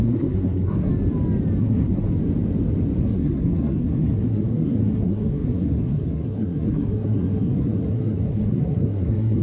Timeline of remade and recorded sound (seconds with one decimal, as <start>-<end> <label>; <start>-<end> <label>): 0.0-0.9 remade; 0.9-1.6 recorded; 1.6-2.1 remade; 2.1-3.0 recorded; 3.0-9.4 remade